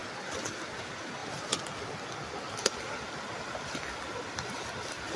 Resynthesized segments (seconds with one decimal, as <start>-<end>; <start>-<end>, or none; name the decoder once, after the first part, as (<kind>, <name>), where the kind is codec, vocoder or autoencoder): none